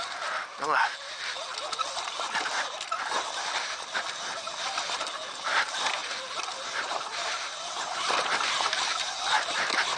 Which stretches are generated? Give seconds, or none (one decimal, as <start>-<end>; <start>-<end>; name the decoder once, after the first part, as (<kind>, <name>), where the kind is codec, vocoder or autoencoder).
6.0-8.8 (vocoder, BigVGAN v2)